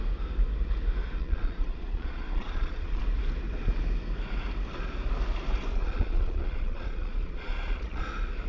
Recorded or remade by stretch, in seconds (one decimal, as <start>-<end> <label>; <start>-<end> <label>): 0.0-1.2 recorded; 1.2-3.0 remade; 3.0-5.7 recorded; 5.7-8.0 remade; 8.0-8.5 recorded